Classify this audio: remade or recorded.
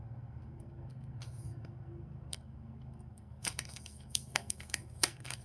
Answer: remade